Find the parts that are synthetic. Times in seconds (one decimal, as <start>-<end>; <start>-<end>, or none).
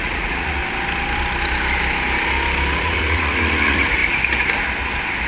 0.0-0.6; 2.7-4.0